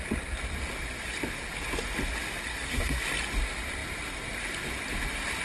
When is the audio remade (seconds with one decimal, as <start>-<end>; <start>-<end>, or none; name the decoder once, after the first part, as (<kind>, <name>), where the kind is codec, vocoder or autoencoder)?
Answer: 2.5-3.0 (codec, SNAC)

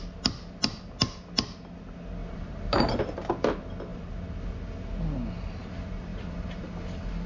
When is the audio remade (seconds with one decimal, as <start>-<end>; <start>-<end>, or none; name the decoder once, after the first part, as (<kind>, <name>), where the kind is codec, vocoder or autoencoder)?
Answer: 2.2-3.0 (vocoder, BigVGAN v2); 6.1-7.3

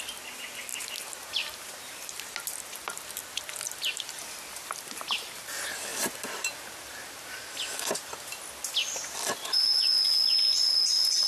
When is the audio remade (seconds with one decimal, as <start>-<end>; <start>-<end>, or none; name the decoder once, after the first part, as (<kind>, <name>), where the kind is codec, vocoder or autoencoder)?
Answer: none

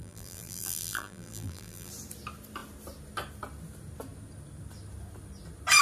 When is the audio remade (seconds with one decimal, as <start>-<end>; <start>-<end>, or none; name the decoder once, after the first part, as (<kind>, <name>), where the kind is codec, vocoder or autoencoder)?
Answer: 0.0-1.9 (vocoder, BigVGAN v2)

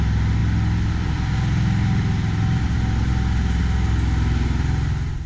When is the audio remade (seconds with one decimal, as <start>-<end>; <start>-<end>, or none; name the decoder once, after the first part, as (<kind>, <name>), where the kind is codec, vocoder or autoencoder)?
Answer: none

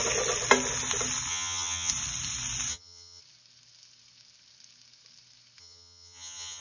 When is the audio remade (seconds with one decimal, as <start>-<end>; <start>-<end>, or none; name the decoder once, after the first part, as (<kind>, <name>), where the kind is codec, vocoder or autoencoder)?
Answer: 1.3-1.9 (vocoder, HiFi-GAN); 2.7-3.2; 5.6-6.6